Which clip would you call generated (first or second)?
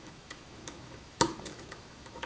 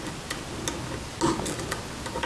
first